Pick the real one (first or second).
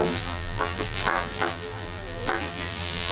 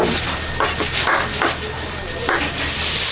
second